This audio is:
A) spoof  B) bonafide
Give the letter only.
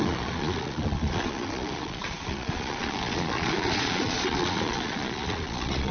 A